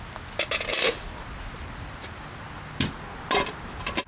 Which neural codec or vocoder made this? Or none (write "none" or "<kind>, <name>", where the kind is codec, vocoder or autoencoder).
none